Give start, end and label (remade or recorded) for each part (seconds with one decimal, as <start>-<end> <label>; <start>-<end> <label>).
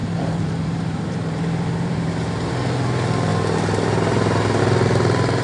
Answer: 0.0-2.5 remade; 2.5-5.4 recorded